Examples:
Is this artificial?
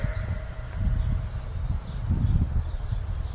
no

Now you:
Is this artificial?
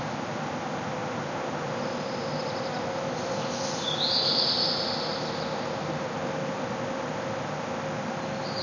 no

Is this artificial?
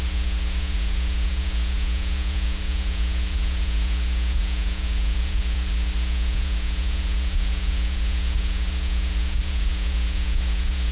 yes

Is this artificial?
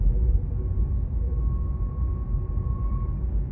no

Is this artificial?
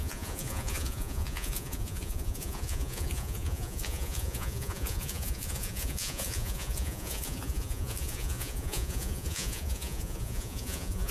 yes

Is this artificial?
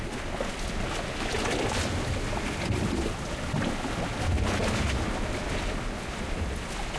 no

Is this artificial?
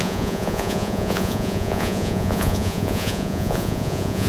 yes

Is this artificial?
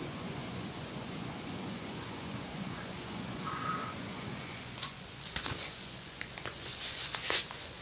yes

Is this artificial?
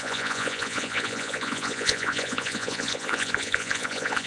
yes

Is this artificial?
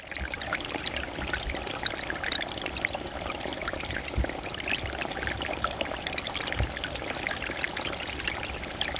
no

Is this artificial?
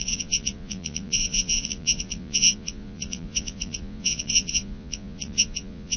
yes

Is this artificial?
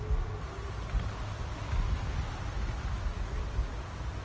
no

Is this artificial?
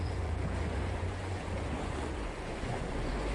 yes